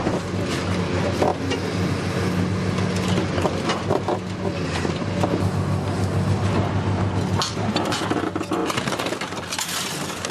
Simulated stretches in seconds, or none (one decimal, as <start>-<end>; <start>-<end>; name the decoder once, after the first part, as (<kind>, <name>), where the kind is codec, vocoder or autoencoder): 7.5-8.2 (vocoder, BigVGAN v2); 8.6-9.4